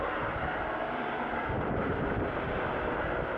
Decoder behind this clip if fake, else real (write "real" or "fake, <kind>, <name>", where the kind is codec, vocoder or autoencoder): real